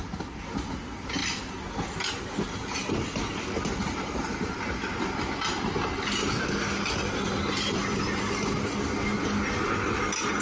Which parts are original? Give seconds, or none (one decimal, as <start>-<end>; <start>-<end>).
0.0-10.4